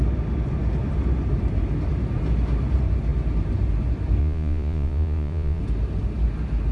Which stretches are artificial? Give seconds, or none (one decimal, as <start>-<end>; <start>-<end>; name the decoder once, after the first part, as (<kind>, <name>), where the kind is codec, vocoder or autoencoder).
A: 4.2-5.6 (vocoder, Vocos)